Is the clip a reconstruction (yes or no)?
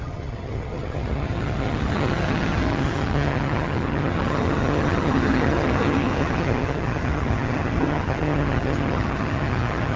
yes